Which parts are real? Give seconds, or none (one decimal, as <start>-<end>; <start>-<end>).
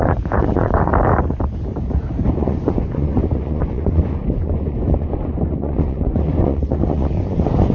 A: 0.9-2.3